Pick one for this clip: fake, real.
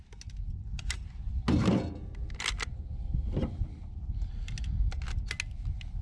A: real